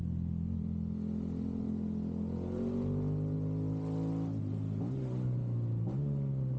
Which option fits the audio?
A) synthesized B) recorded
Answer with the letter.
B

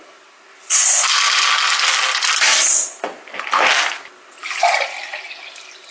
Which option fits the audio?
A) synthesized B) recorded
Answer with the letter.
B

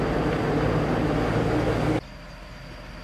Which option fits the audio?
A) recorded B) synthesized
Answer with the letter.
A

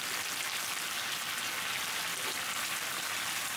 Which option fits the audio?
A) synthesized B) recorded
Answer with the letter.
B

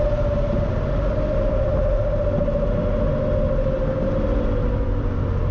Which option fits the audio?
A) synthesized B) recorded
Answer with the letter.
B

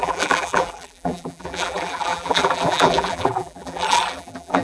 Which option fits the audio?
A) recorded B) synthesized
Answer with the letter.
B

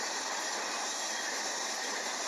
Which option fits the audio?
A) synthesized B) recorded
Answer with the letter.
A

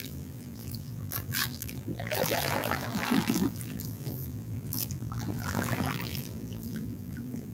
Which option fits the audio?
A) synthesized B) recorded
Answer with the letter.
A